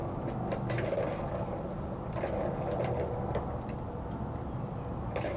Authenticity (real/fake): real